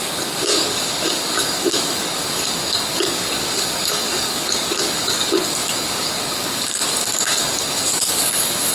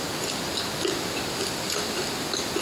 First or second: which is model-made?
first